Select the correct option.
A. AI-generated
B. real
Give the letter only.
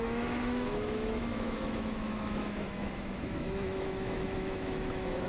A